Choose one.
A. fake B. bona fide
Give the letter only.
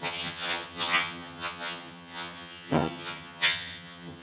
A